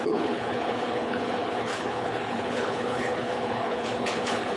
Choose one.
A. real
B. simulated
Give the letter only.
B